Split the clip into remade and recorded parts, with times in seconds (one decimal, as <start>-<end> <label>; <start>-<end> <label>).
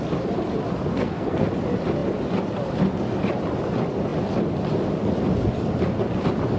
0.0-0.9 recorded; 0.9-1.5 remade; 1.5-6.6 recorded